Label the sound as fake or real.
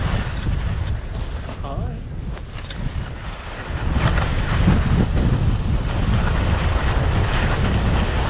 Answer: real